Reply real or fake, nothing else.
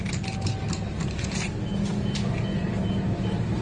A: real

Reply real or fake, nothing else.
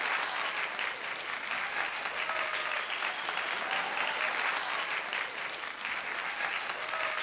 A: real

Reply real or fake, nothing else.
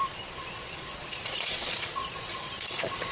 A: fake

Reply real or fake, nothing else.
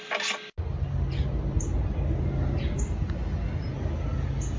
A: real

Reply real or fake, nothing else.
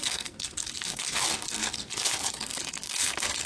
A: fake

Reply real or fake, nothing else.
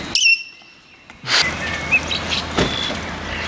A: real